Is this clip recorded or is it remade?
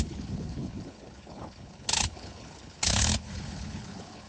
remade